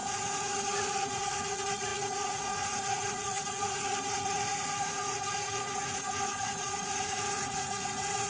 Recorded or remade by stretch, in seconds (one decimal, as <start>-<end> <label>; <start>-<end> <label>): 0.0-8.3 remade